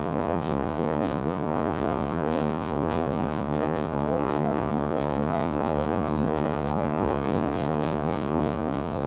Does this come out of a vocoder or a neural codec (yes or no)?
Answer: yes